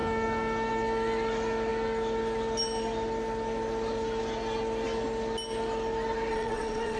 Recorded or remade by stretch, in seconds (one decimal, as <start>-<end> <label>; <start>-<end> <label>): 0.0-6.3 recorded; 6.3-7.0 remade